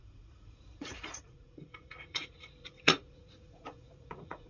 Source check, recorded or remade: remade